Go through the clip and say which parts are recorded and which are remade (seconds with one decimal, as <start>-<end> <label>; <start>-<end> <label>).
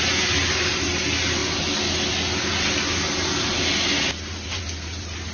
0.0-5.3 recorded